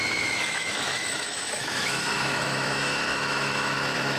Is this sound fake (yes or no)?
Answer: yes